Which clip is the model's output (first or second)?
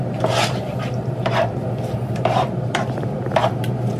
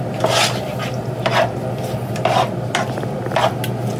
first